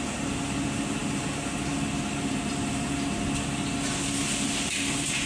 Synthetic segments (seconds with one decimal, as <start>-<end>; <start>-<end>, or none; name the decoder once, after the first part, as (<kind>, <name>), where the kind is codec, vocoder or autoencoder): none